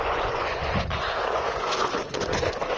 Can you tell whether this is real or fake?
fake